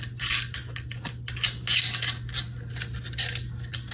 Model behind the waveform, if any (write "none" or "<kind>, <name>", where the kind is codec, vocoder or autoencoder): none